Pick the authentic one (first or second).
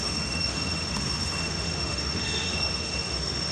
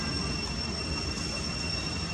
second